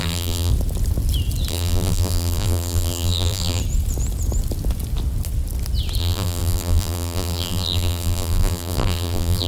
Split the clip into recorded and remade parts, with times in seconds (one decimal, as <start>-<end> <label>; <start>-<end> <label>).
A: 0.0-0.5 remade; 0.5-1.5 recorded; 1.5-3.6 remade; 3.6-6.0 recorded; 6.0-9.5 remade